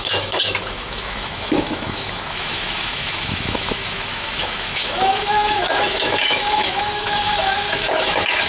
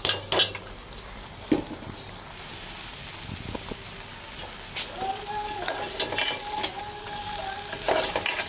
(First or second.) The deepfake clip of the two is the first